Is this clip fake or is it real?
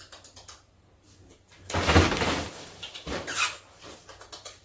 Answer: real